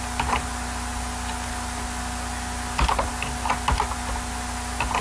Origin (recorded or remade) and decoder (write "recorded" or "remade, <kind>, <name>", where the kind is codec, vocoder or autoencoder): recorded